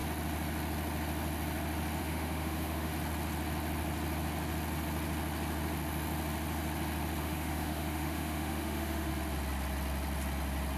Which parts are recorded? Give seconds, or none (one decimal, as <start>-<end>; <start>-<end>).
0.0-2.0; 2.9-7.2; 9.1-10.8